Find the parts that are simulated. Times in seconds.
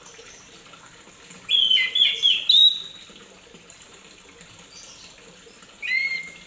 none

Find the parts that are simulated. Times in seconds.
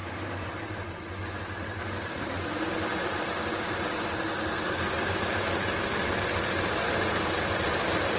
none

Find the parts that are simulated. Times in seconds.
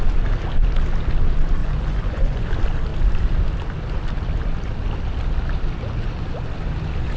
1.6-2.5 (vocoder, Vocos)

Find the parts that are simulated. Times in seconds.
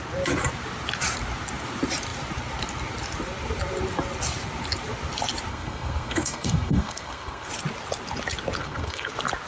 5.5-7.5 (codec, SNAC); 8.6-9.1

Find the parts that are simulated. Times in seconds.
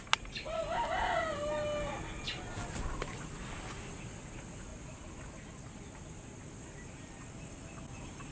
none